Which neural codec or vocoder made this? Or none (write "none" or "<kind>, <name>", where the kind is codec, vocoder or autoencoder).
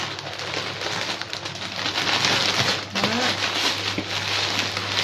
none